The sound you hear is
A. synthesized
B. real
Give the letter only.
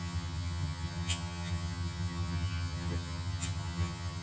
A